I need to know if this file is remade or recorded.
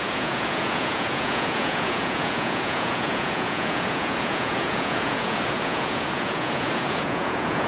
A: remade